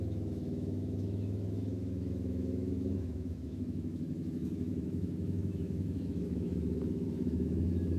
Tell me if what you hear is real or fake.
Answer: fake